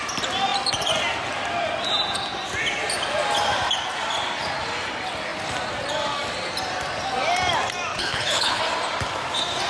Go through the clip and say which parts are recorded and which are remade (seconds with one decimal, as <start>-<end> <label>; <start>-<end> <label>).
0.0-7.9 recorded; 7.9-8.6 remade; 8.6-9.7 recorded